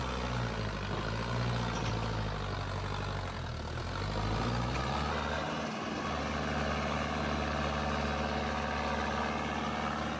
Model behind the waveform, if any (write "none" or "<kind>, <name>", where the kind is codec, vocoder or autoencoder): none